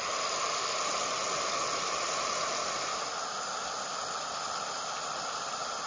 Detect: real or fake real